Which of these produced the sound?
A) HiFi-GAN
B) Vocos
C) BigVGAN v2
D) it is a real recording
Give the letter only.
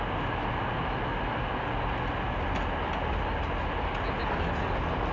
D